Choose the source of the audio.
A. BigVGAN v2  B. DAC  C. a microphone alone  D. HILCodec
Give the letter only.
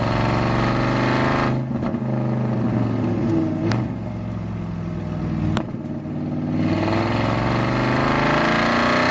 C